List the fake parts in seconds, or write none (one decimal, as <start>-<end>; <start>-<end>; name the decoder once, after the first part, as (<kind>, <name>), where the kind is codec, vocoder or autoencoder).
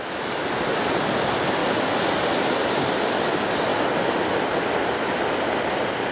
none